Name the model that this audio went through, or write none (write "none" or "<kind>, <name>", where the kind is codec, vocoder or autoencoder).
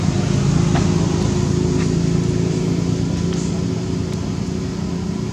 none